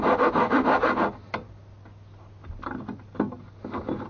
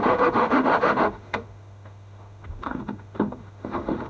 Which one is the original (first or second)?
first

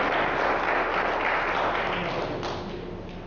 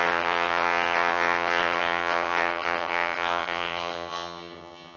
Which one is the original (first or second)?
first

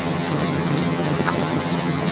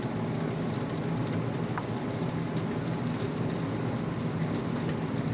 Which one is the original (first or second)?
second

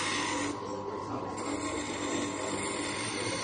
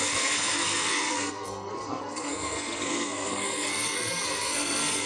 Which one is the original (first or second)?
first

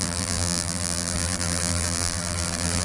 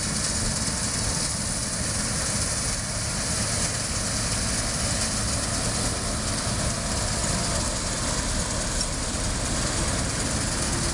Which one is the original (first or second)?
second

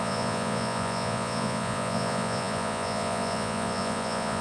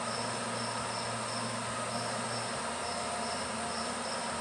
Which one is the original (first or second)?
second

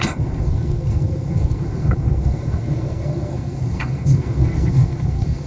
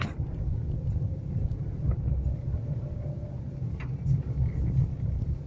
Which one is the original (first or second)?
second